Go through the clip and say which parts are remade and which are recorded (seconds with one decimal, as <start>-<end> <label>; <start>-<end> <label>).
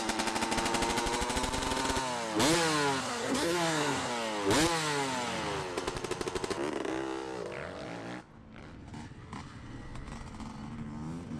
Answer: 0.0-3.0 recorded; 3.0-4.1 remade; 4.1-11.4 recorded